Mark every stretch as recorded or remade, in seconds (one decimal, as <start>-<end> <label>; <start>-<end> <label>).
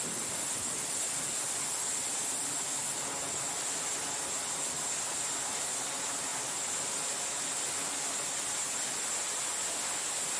0.0-6.3 recorded; 6.3-7.0 remade; 7.0-10.4 recorded